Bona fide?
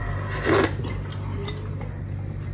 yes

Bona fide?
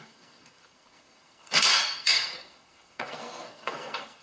no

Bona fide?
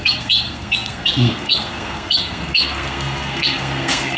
no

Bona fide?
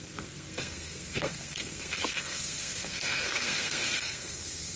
no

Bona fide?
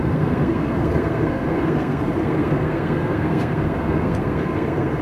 no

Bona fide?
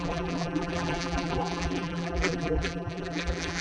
no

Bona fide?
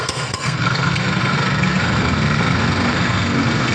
no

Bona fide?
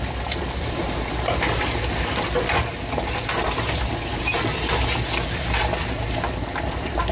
yes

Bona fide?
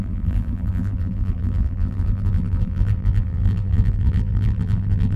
no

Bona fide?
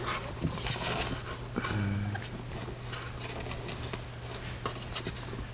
yes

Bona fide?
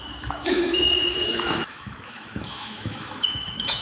no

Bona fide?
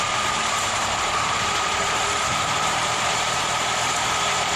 no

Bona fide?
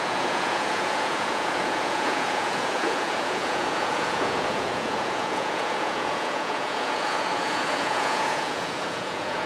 no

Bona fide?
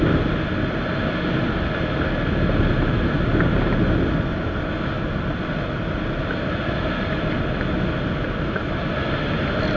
yes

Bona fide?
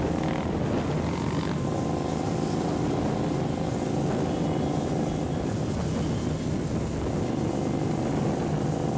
yes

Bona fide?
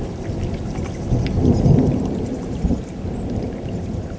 yes